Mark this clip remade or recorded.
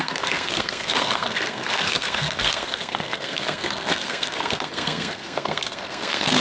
remade